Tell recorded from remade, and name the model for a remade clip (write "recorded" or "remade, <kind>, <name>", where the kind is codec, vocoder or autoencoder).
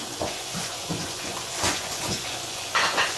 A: remade, vocoder, Vocos